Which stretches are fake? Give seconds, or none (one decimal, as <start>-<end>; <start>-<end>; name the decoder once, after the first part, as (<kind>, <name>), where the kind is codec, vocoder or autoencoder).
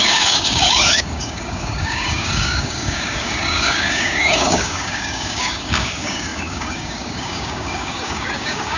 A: 0.0-8.8 (codec, DAC)